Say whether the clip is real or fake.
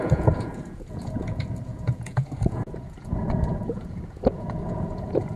fake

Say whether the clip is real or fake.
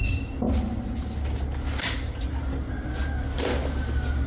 real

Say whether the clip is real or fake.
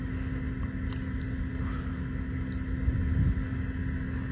real